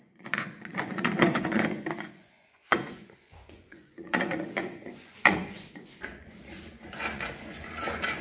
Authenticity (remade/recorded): remade